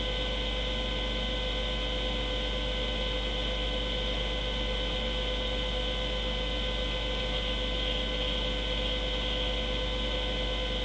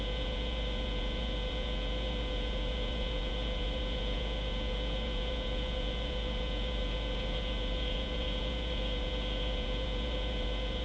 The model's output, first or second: second